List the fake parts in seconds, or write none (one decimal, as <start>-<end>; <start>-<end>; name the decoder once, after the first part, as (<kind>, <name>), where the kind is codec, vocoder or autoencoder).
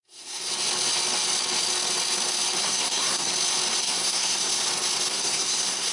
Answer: 0.0-0.5 (codec, SNAC); 2.6-3.3; 3.8-4.5; 5.1-5.9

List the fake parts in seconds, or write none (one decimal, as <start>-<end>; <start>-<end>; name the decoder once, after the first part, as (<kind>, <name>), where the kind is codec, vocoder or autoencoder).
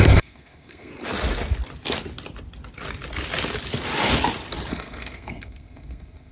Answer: 0.0-0.9 (codec, SNAC); 4.7-6.3